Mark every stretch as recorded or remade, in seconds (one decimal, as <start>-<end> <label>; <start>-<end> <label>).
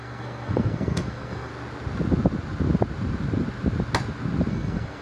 0.0-1.5 remade; 1.5-4.5 recorded; 4.5-5.0 remade